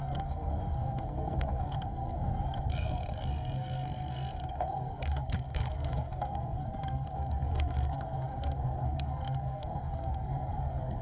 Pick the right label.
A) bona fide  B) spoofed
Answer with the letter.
B